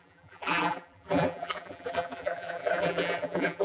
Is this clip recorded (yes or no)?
no